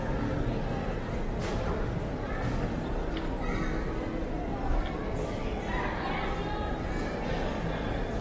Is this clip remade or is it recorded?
recorded